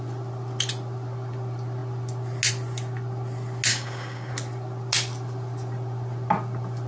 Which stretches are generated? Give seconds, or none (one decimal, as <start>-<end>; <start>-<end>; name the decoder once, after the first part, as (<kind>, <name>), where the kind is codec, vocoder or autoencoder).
3.7-4.3 (codec, DAC)